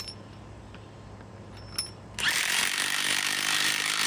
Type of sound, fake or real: fake